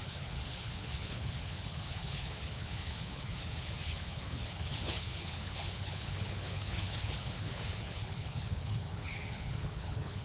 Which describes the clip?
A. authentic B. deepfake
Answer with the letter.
B